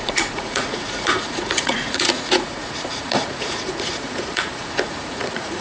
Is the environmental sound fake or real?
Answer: fake